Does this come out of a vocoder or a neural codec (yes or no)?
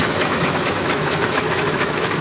yes